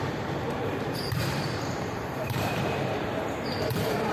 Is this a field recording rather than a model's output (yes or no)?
no